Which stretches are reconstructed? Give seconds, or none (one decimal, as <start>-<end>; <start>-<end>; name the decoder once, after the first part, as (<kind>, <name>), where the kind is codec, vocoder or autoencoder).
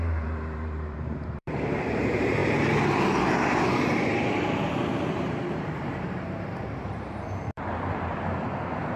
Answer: 0.0-8.1 (vocoder, BigVGAN v2)